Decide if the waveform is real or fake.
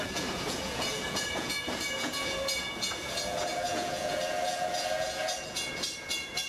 fake